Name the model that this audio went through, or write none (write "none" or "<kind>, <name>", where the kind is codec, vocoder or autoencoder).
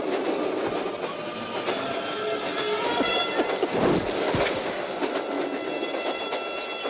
none